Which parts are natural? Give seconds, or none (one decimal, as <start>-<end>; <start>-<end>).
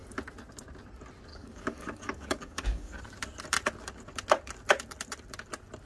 0.0-1.3; 3.0-5.9